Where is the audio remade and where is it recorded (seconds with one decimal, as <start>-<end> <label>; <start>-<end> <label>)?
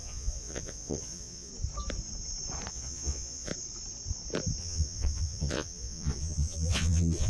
0.0-1.5 remade; 1.5-2.7 recorded; 2.7-3.5 remade; 3.5-4.6 recorded; 4.6-7.3 remade